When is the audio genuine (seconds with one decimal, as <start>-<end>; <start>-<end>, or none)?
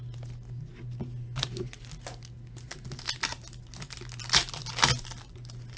0.0-5.8